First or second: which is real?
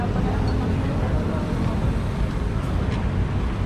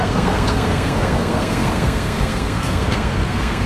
first